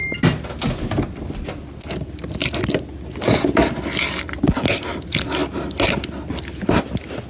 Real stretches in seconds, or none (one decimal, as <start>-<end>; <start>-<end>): 0.0-7.3